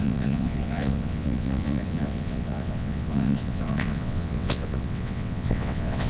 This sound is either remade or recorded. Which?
remade